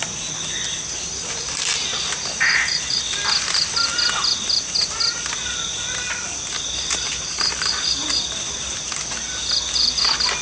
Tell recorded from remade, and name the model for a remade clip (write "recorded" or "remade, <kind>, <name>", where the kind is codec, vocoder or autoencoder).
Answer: recorded